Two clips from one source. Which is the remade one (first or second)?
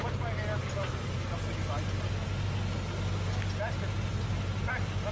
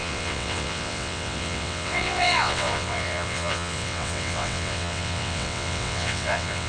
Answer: second